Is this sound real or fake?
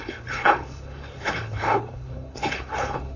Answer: fake